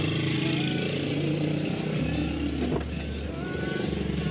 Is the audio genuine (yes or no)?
yes